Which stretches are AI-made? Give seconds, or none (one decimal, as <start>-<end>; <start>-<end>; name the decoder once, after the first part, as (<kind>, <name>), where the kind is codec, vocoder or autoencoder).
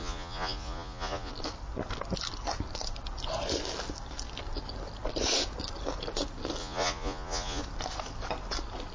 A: 0.0-1.3 (vocoder, Vocos); 6.6-7.6